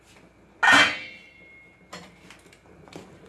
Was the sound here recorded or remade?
recorded